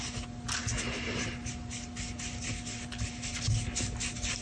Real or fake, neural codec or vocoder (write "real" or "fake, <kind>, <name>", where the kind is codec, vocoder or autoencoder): real